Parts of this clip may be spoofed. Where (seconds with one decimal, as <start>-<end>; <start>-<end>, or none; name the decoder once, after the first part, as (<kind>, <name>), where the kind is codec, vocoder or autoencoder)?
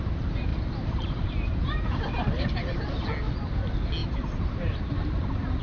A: 0.5-2.8 (vocoder, BigVGAN v2); 4.0-5.6